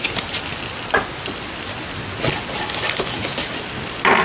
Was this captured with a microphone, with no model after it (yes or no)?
yes